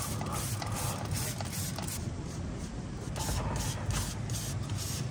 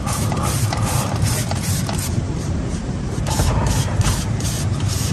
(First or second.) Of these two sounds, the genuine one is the first